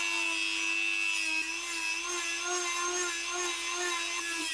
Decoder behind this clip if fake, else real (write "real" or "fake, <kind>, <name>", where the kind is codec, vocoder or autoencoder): real